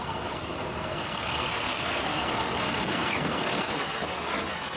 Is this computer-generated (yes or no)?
yes